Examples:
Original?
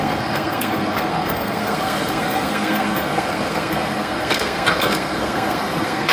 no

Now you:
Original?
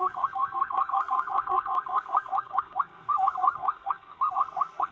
no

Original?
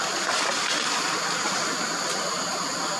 yes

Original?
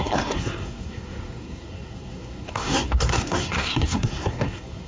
no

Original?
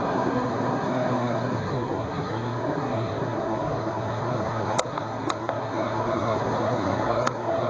no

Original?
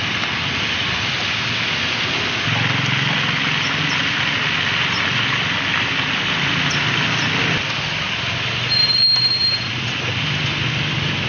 yes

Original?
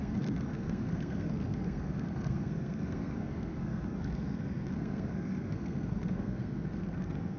no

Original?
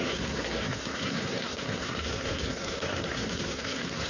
no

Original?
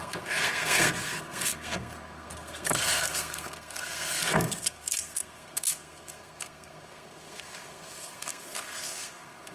no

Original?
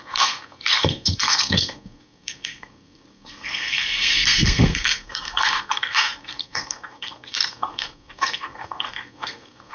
no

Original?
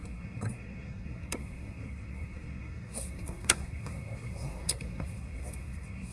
no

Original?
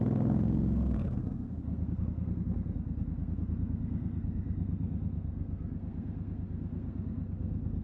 no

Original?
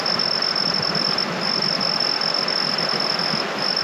yes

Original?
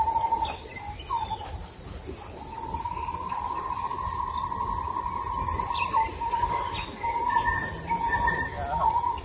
yes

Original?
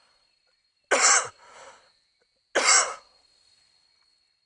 yes